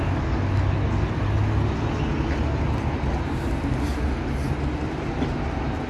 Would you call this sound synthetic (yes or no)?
no